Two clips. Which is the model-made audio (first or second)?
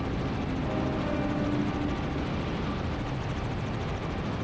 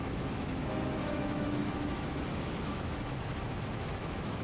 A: second